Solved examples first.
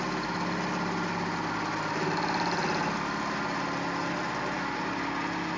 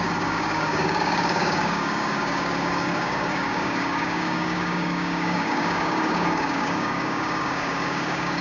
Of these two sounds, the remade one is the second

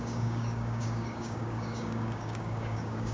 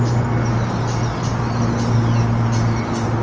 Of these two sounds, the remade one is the first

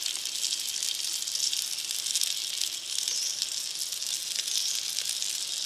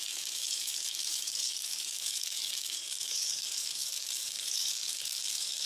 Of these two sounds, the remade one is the second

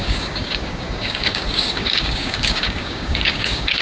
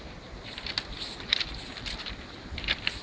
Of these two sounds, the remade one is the first